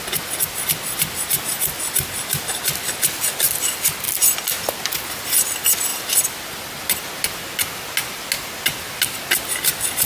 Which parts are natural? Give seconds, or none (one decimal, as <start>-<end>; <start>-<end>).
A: 0.0-5.9; 7.0-10.1